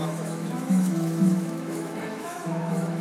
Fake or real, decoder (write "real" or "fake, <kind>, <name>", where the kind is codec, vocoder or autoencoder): fake, autoencoder, DAC-VAE